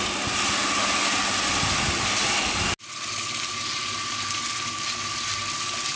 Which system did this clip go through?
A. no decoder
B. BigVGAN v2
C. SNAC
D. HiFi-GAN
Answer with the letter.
A